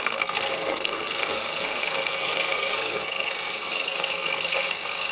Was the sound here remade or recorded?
remade